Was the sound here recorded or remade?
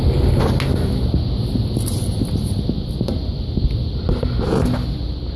recorded